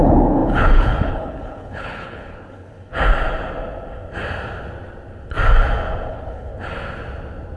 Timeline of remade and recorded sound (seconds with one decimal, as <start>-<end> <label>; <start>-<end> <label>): 0.0-2.9 remade; 2.9-6.1 recorded; 6.1-6.5 remade; 6.5-7.6 recorded